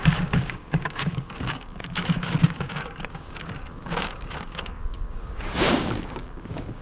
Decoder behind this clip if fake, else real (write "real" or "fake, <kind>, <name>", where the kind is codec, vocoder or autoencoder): fake, codec, DAC